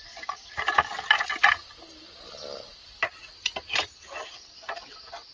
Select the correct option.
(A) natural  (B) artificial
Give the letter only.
A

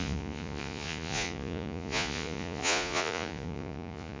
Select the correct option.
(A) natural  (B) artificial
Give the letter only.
B